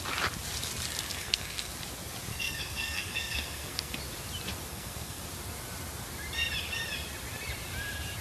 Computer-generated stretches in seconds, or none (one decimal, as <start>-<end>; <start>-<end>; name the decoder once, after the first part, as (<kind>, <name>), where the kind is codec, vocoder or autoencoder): 1.1-1.7 (codec, SNAC); 2.3-4.0; 4.7-5.2